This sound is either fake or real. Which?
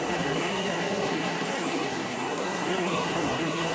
fake